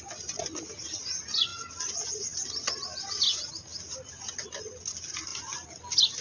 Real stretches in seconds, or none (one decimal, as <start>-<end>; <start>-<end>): 0.0-6.2